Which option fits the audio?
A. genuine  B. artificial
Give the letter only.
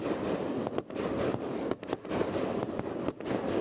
A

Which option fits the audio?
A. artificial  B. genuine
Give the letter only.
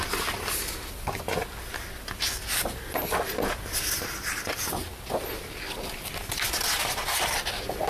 B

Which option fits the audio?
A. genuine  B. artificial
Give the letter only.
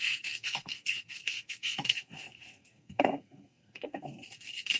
B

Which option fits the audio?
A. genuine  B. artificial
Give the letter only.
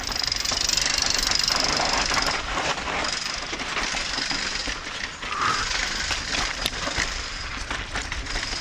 B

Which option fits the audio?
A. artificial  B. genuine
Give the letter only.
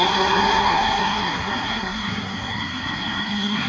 A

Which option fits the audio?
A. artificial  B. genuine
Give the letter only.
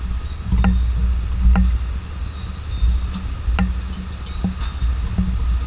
B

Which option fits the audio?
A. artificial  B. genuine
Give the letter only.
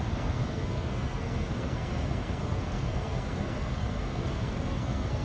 A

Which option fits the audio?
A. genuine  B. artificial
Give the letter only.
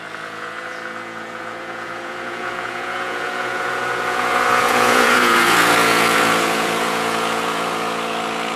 B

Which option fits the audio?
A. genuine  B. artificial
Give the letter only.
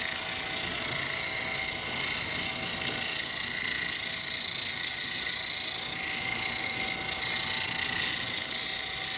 A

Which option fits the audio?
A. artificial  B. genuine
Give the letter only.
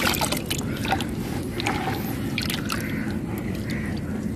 B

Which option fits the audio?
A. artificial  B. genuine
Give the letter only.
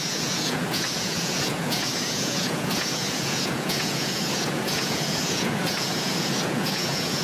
A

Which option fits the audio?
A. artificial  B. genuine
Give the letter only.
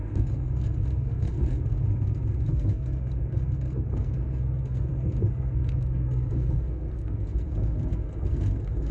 A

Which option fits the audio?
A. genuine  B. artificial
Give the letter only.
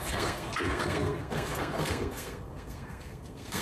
B